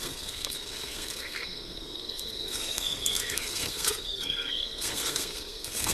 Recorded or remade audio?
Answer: remade